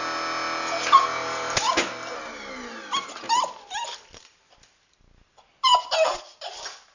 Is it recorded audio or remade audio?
recorded